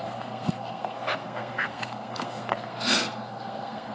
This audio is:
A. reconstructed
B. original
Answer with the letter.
A